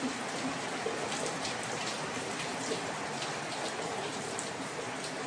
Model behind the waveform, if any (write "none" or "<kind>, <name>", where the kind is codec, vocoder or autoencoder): vocoder, BigVGAN v2